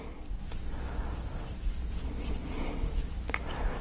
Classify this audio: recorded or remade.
recorded